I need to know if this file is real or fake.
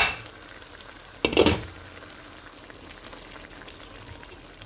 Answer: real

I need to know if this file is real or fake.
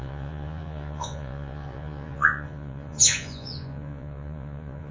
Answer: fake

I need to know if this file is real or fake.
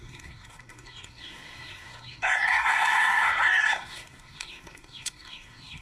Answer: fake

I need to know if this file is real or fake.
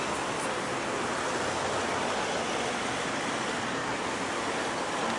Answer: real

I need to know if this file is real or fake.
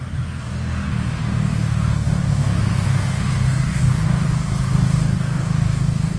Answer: fake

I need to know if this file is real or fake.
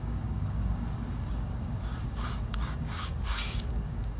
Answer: fake